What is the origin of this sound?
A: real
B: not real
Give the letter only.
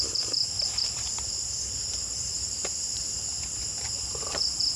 B